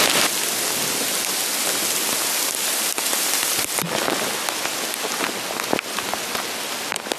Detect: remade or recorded recorded